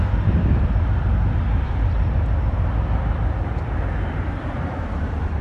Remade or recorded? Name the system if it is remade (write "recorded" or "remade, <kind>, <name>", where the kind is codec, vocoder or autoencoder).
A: remade, vocoder, BigVGAN v2